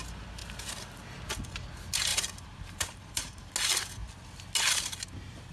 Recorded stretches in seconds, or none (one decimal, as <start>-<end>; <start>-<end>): 0.0-2.1; 3.5-5.5